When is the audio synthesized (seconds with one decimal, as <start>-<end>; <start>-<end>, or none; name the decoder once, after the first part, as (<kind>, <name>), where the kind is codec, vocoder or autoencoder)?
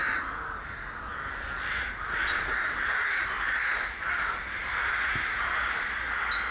none